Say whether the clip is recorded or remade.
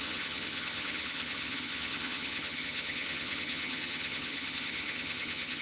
remade